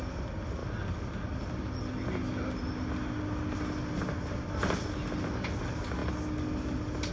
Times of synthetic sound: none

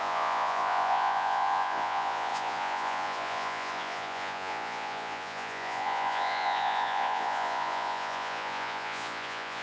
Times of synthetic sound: 0.0-9.6 (vocoder, Vocos)

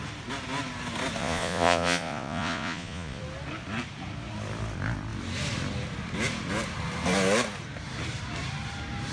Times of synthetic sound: 1.2-3.2 (vocoder, Vocos)

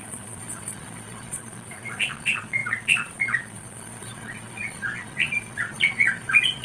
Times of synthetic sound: 0.0-6.6 (vocoder, Vocos)

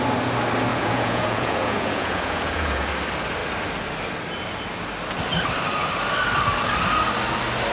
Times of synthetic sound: 0.7-2.9 (vocoder, Vocos)

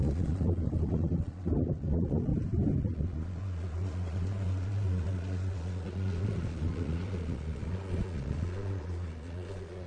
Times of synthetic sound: 0.0-2.3 (vocoder, Vocos); 2.8-9.9